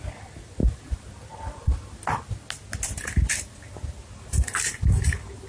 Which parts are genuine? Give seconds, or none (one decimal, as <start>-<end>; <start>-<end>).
0.0-5.5